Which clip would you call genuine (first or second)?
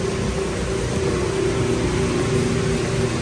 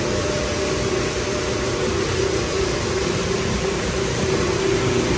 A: first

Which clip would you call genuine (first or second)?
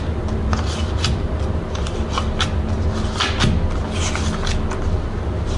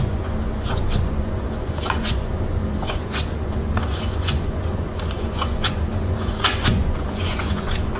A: first